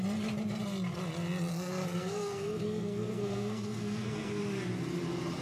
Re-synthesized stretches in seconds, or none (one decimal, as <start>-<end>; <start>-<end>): 1.5-4.4